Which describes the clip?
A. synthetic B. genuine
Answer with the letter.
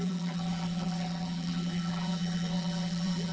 A